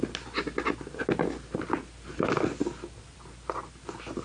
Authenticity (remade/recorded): recorded